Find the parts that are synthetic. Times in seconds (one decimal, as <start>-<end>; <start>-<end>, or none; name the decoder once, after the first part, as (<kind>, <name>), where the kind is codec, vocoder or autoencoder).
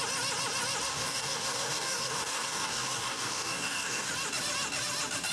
0.9-4.1 (codec, DAC)